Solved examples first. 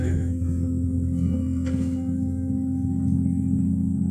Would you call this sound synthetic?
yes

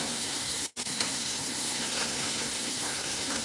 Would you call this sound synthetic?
yes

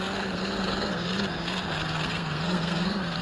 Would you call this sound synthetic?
yes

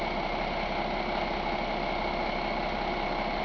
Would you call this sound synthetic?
no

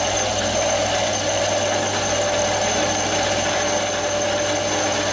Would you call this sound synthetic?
no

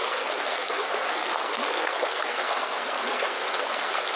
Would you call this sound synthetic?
yes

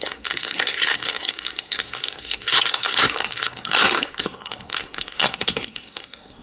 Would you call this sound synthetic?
yes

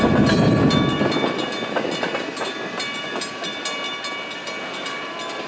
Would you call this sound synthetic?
no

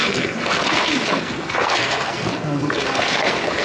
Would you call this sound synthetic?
yes